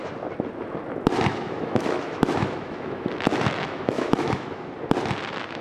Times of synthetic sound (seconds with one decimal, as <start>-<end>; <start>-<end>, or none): 1.3-4.7